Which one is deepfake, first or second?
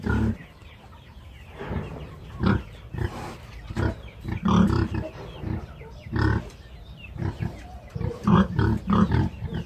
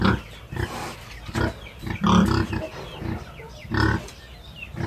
first